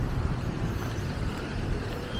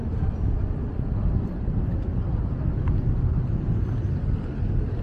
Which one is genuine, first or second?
second